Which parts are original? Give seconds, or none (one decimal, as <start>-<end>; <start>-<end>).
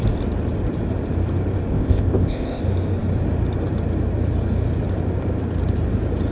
0.0-1.7; 2.6-6.3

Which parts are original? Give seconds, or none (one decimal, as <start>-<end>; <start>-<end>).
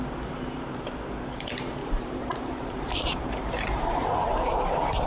0.0-1.8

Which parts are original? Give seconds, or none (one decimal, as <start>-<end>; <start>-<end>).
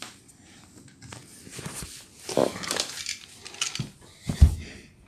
0.0-2.4; 3.0-5.1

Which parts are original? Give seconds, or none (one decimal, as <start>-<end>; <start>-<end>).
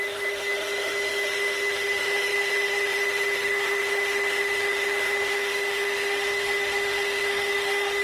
none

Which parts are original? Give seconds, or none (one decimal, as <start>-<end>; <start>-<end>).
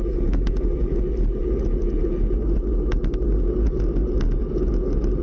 1.0-5.2